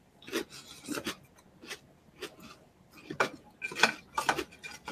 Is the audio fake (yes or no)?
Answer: no